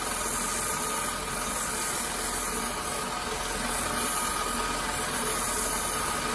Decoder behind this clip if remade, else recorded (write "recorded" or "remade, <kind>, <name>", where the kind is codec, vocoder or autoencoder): recorded